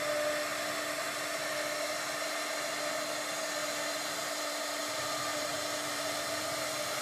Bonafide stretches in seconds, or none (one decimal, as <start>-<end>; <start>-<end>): 0.0-3.6; 6.5-7.0

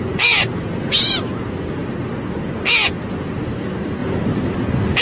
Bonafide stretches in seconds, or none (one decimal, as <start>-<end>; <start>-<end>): 0.0-5.0

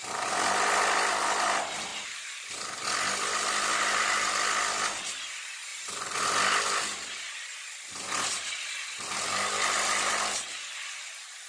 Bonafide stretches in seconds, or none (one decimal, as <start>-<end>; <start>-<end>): 0.0-1.9; 2.5-3.7; 4.3-11.5